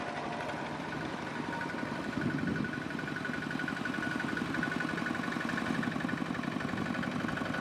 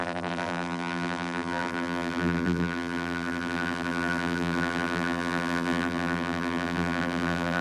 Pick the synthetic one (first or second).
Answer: second